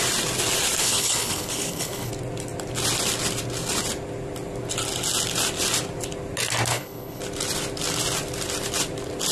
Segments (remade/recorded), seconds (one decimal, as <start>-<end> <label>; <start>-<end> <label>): 0.0-0.8 recorded; 0.8-2.1 remade; 2.1-6.7 recorded; 6.7-7.2 remade; 7.2-9.3 recorded